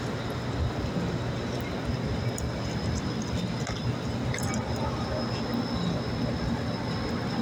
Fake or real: real